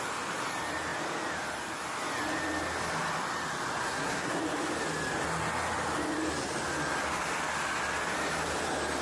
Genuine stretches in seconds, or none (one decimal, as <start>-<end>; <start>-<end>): 0.0-3.8; 4.4-9.0